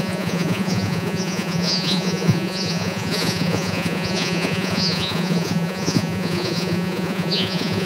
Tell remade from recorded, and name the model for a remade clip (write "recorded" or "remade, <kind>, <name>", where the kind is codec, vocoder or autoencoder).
remade, vocoder, Vocos